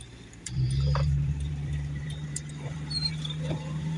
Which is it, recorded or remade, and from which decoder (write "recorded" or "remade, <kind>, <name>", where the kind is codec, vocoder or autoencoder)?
remade, vocoder, BigVGAN v2